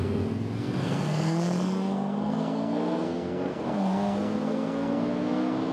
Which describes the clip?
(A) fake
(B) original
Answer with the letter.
A